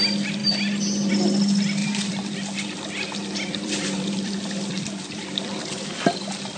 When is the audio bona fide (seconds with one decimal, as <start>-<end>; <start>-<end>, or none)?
0.0-1.8; 5.6-6.6